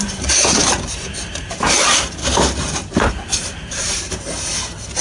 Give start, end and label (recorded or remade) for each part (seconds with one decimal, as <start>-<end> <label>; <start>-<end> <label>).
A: 0.0-2.2 remade; 2.2-3.1 recorded; 3.1-4.5 remade; 4.5-5.0 recorded